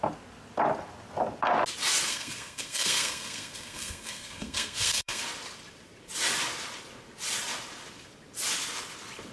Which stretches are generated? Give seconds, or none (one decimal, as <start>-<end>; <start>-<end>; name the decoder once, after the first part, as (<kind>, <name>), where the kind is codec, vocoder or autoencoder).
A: 2.1-5.2 (codec, SNAC)